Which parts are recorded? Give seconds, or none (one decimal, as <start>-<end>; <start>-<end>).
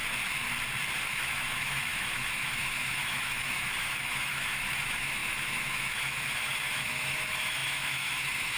0.0-1.1